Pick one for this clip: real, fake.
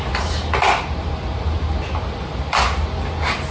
real